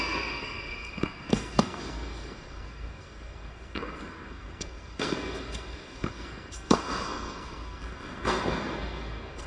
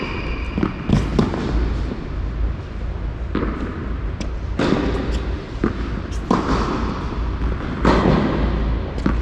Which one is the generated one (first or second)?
first